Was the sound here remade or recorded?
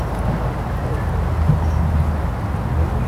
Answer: recorded